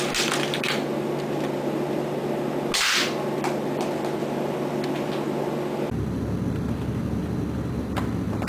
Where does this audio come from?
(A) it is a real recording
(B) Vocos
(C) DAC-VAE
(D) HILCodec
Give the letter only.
A